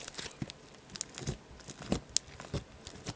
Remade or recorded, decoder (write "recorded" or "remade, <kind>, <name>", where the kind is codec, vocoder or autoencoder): recorded